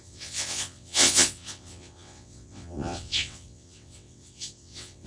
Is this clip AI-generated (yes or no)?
yes